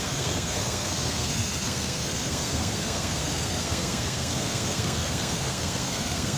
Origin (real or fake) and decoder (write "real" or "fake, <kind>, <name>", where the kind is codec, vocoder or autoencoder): fake, codec, SNAC